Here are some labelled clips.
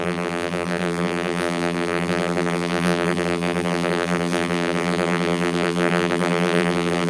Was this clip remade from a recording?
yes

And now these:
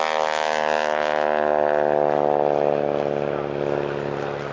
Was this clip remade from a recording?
no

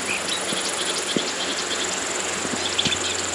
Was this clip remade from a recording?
yes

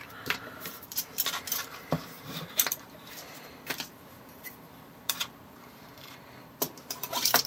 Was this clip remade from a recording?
yes